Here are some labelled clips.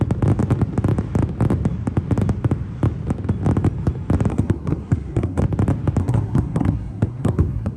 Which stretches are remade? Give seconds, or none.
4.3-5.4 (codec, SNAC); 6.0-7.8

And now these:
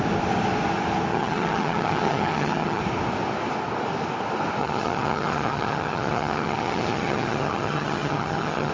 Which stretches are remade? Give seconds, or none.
1.1-2.8 (vocoder, HiFi-GAN); 4.6-8.7

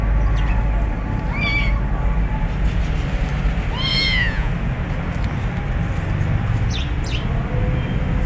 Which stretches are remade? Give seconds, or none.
3.9-4.5 (vocoder, Vocos)

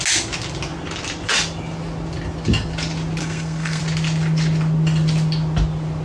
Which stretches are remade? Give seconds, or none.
3.2-3.8 (codec, SNAC)

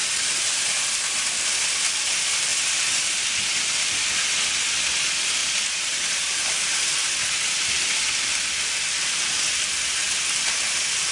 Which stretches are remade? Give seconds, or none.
0.0-0.8 (vocoder, BigVGAN v2); 5.4-7.0

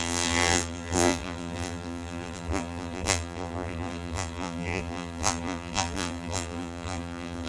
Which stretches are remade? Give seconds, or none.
0.0-7.5 (vocoder, BigVGAN v2)

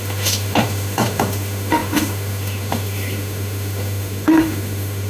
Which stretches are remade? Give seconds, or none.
0.0-5.1 (autoencoder, DAC-VAE)

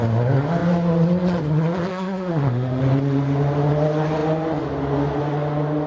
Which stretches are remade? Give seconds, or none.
1.9-2.8 (autoencoder, DAC-VAE)